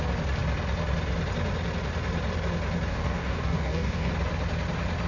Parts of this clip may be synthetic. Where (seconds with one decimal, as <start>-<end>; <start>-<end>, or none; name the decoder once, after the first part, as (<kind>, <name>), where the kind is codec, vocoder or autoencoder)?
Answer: 2.9-4.1 (codec, DAC)